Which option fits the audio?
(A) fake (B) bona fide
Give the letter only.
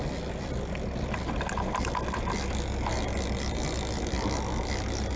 B